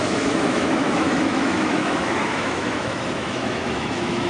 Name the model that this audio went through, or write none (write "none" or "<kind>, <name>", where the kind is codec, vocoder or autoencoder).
autoencoder, DAC-VAE